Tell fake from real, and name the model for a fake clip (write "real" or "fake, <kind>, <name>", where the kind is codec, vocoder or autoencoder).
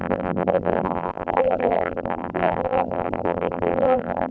fake, vocoder, BigVGAN v2